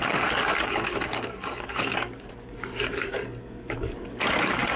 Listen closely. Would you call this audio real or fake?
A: fake